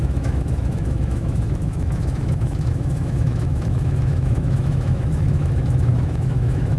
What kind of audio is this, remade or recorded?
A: remade